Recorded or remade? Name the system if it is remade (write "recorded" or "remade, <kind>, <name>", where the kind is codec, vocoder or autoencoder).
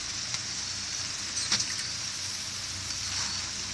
recorded